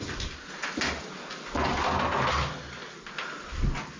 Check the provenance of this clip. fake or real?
real